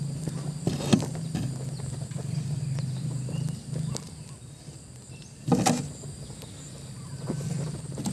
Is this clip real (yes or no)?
yes